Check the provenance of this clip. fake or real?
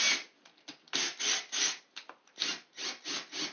real